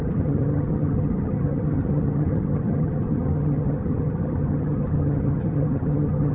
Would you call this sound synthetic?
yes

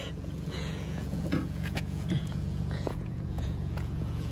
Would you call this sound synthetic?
yes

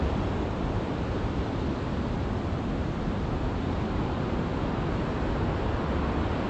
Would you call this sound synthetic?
no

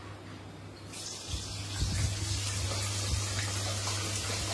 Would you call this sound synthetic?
no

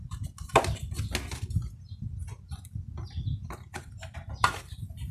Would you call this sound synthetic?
no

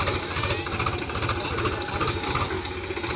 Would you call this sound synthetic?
no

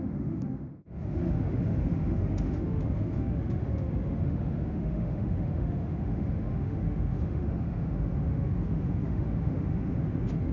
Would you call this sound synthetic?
yes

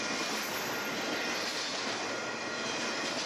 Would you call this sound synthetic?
no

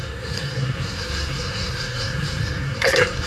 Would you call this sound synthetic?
yes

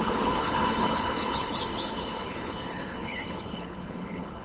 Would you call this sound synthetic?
yes